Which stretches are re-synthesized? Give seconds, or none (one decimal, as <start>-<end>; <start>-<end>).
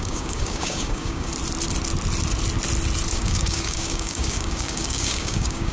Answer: 0.0-1.3; 3.1-5.7